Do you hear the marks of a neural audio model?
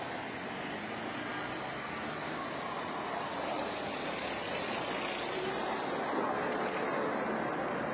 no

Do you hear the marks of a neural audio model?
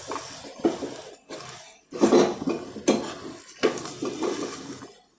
no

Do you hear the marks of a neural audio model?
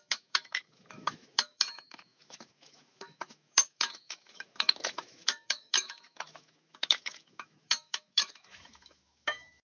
yes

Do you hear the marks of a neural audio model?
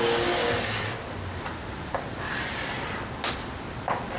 no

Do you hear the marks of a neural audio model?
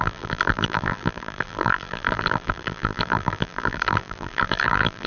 yes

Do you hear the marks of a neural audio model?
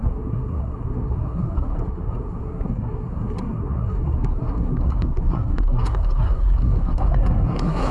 yes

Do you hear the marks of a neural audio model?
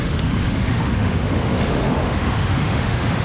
yes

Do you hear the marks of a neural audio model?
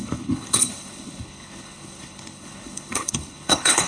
yes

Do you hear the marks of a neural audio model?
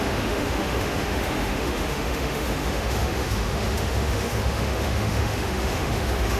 yes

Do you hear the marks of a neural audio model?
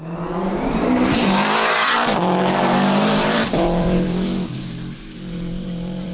yes